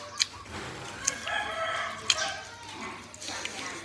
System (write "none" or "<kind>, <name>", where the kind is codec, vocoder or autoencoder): none